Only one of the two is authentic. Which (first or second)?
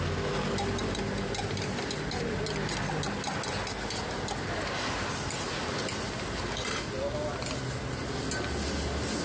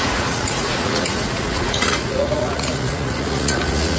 first